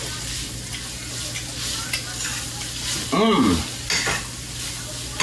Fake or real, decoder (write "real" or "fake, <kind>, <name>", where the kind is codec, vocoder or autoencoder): real